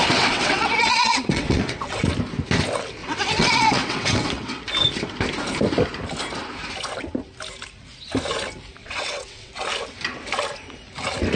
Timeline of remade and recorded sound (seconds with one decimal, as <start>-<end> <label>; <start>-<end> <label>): 0.0-2.0 remade; 2.0-3.0 recorded; 3.0-4.6 remade; 4.6-8.8 recorded; 8.8-9.5 remade; 9.5-11.4 recorded